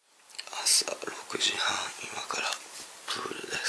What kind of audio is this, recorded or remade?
recorded